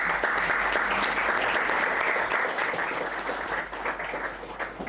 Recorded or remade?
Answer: recorded